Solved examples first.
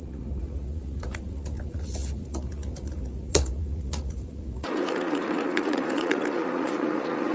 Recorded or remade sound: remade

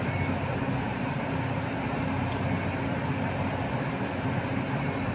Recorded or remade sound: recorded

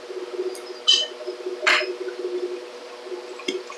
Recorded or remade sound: recorded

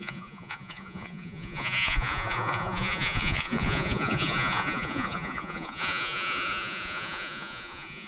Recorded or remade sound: remade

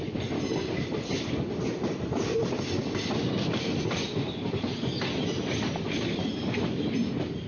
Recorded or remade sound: recorded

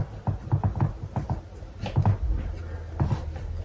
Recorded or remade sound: recorded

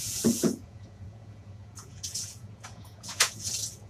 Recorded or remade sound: remade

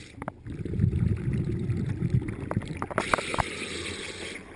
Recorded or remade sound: recorded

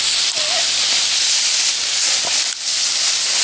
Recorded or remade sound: recorded